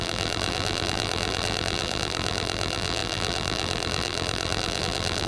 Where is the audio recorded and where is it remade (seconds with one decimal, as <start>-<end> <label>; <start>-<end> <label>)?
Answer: 0.0-5.3 remade